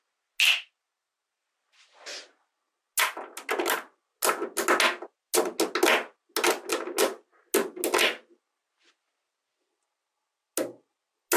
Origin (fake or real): real